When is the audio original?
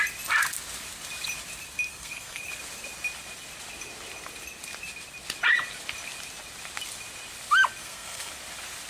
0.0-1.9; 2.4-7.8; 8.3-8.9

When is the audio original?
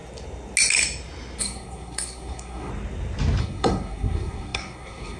0.0-1.4; 2.7-3.4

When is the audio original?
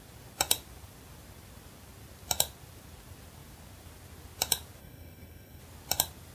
0.0-4.8; 5.6-6.3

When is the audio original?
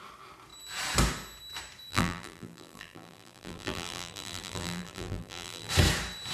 0.0-1.9; 5.7-6.3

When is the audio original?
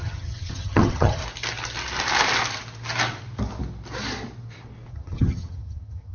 1.2-4.9